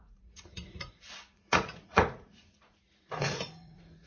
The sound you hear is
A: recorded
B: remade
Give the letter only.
B